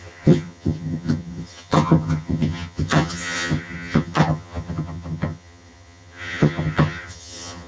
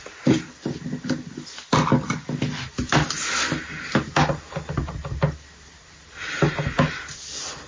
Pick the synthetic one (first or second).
first